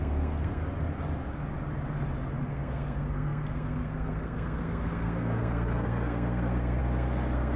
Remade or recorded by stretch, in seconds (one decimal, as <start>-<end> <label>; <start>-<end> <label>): 0.0-0.6 remade; 0.6-2.5 recorded; 2.5-7.6 remade